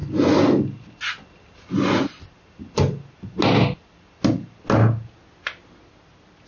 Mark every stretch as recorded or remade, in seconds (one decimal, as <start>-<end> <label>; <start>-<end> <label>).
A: 0.0-6.5 recorded

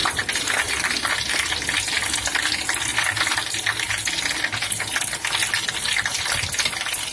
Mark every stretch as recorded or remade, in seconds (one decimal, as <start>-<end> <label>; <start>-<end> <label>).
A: 0.0-7.1 recorded